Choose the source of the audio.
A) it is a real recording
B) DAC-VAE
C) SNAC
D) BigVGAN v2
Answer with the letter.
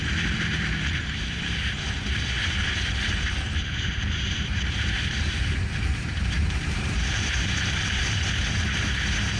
D